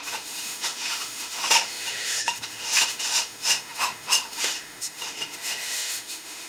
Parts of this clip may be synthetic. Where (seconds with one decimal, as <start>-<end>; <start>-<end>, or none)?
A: 0.0-6.5